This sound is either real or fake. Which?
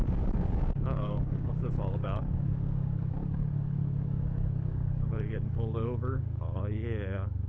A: fake